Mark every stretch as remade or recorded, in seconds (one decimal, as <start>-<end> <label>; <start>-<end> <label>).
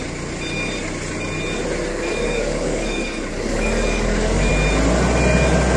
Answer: 0.0-1.9 recorded; 1.9-4.5 remade; 4.5-5.8 recorded